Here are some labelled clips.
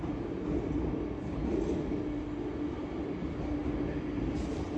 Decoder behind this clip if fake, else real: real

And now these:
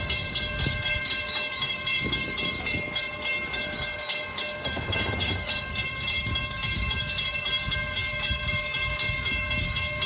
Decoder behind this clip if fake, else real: fake, codec, DAC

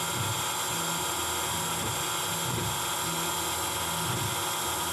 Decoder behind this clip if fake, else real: real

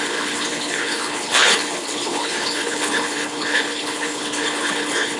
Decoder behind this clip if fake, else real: fake, codec, HILCodec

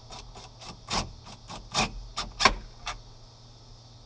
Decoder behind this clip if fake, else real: real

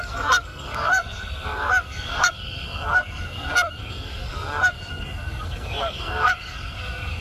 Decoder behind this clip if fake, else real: fake, codec, SNAC